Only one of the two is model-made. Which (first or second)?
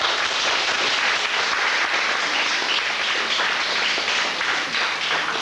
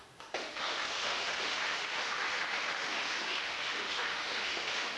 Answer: second